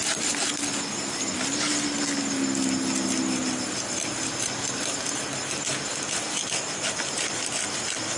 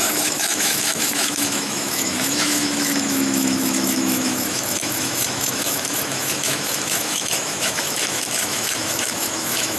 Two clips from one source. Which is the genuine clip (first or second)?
first